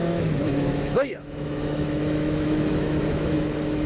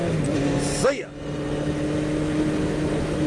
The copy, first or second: first